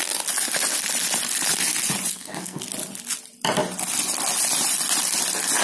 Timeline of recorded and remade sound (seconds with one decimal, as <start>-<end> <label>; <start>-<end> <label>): 0.0-2.1 recorded; 2.1-2.6 remade; 2.6-5.6 recorded